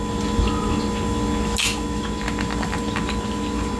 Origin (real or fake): real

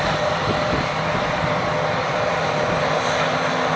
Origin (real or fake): real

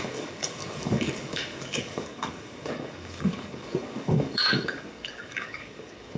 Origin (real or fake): fake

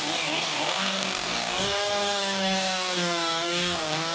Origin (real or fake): fake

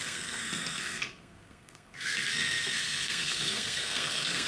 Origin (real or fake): fake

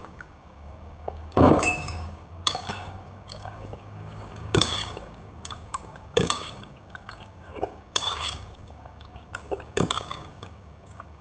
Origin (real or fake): fake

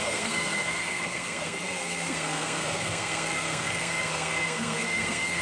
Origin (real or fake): fake